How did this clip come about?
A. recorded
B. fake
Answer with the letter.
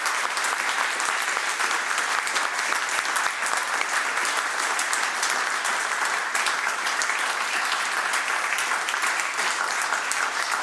A